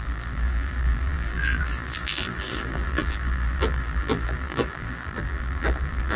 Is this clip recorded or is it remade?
remade